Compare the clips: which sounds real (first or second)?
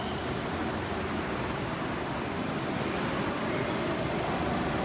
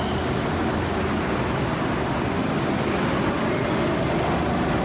second